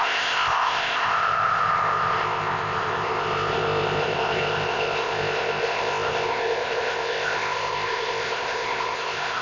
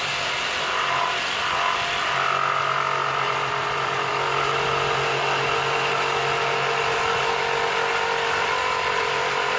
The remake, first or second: first